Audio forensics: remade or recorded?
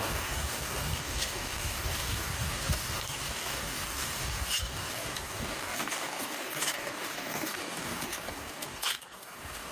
remade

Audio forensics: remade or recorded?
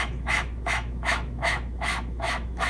remade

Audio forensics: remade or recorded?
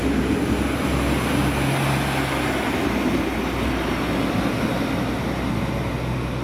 recorded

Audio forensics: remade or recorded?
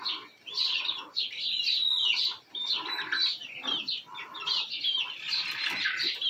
recorded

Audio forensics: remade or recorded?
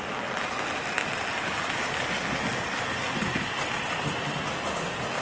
recorded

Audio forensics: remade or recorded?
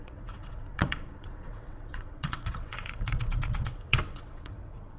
remade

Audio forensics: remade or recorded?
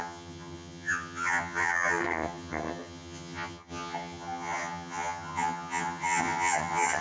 remade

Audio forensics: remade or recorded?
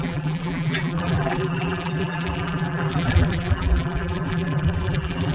remade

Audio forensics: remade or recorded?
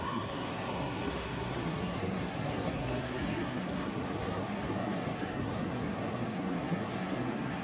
remade